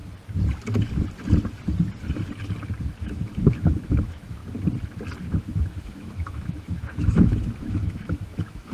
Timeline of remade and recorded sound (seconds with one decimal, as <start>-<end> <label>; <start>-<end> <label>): 0.0-2.8 recorded; 2.8-4.4 remade; 4.4-5.4 recorded; 5.4-8.7 remade